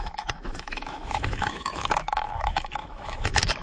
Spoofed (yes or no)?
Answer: yes